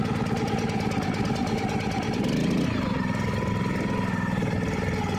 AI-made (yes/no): no